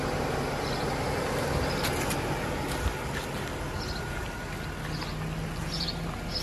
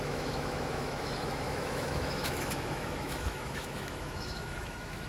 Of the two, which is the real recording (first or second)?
first